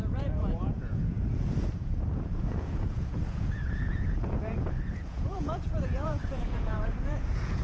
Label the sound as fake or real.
fake